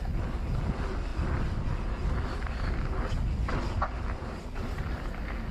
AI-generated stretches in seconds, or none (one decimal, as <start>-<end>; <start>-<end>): none

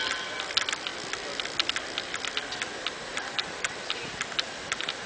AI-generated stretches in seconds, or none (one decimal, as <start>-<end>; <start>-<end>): 3.1-5.1

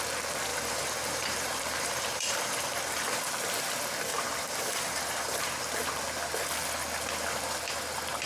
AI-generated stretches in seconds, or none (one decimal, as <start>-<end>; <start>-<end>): 0.5-3.3; 4.1-5.5

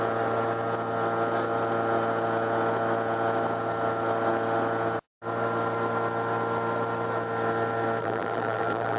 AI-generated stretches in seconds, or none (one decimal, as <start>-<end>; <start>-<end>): 8.0-9.0

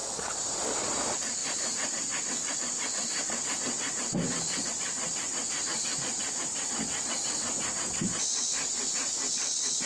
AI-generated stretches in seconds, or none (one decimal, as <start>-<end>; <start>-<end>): 0.0-0.9; 1.4-4.7

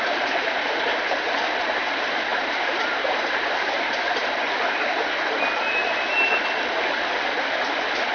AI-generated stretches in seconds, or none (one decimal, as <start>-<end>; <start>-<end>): 2.3-5.1

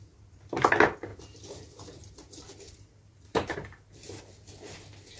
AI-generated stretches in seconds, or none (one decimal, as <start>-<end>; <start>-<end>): 1.1-4.2